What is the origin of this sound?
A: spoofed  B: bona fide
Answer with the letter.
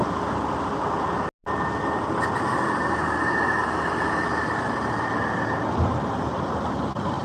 B